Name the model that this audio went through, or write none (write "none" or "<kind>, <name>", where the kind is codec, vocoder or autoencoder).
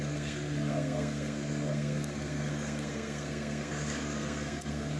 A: codec, SNAC